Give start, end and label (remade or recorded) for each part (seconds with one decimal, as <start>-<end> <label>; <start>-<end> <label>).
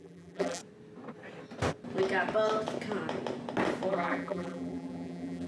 0.0-0.6 remade; 0.6-3.9 recorded; 3.9-5.5 remade